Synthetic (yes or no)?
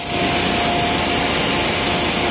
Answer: no